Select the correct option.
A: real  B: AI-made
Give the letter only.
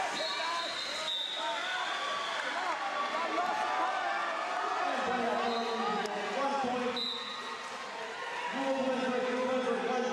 A